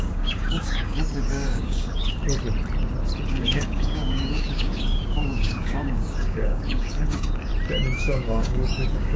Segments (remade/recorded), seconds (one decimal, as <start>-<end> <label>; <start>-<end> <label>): 0.0-2.2 remade; 2.2-3.3 recorded; 3.3-7.5 remade; 7.5-8.0 recorded; 8.0-9.2 remade